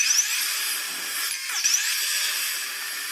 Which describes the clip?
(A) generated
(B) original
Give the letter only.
B